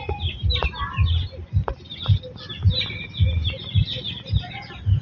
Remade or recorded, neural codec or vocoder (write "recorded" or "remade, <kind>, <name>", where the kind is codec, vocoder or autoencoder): recorded